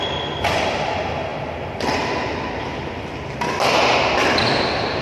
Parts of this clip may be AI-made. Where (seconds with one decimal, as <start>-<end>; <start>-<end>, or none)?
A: none